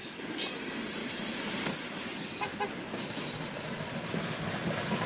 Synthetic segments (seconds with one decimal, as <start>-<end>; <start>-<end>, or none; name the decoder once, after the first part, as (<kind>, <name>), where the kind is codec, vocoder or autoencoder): none

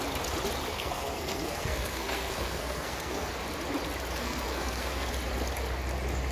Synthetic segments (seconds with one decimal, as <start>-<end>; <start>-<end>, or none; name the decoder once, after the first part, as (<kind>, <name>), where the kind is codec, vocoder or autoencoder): 0.7-3.3 (codec, SNAC); 4.2-5.1